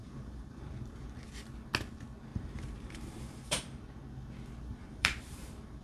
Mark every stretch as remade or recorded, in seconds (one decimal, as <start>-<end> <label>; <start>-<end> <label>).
0.0-0.7 remade; 0.7-2.3 recorded; 2.3-3.8 remade; 3.8-4.8 recorded; 4.8-5.8 remade